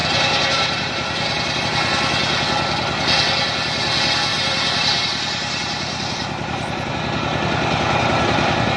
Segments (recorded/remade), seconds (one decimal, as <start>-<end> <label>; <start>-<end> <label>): 0.0-1.6 remade; 1.6-4.3 recorded; 4.3-6.9 remade; 6.9-8.8 recorded